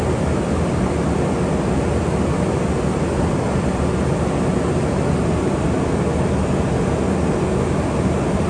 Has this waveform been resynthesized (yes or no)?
no